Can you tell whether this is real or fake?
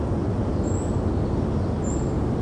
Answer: real